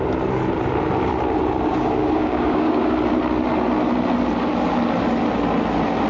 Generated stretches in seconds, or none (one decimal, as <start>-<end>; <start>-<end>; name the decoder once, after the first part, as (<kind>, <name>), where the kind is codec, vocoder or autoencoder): 1.7-2.8 (codec, DAC)